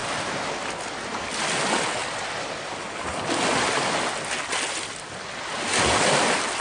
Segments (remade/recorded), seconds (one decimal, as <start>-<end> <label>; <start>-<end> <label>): 0.0-6.6 recorded